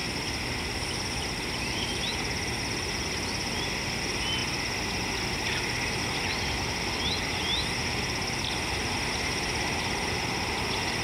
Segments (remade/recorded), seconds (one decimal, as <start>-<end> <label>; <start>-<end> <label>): 0.0-11.0 recorded